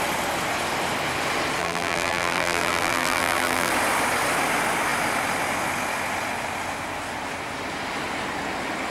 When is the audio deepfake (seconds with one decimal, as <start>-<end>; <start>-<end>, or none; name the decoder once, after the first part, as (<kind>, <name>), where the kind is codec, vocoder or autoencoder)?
1.6-3.7 (vocoder, BigVGAN v2)